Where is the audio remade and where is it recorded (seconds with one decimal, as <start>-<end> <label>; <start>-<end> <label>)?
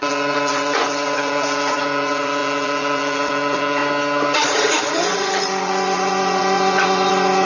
0.0-3.8 remade; 3.8-4.8 recorded; 4.8-7.5 remade